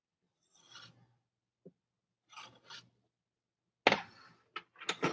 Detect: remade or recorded recorded